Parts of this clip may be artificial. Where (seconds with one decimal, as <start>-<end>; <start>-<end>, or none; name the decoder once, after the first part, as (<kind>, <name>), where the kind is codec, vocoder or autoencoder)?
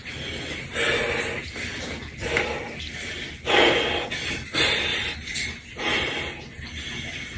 none